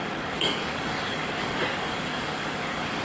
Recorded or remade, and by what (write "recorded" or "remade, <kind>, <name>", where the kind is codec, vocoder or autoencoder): remade, codec, DAC